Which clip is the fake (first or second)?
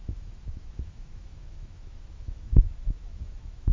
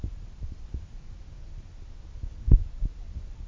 first